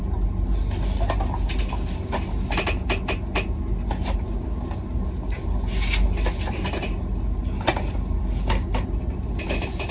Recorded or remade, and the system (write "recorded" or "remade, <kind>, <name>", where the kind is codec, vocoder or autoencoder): recorded